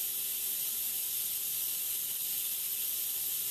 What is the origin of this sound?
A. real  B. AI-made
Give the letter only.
A